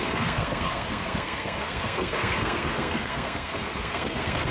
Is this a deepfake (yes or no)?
yes